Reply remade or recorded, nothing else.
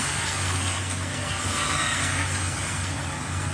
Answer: remade